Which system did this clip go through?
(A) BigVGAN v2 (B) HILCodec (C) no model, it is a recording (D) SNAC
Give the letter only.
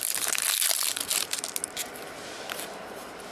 C